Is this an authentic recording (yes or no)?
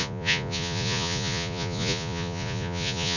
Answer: no